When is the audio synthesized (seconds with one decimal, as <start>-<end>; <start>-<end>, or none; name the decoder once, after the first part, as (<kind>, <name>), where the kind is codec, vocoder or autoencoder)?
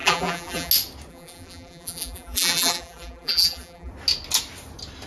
0.0-0.7 (vocoder, BigVGAN v2); 1.1-3.9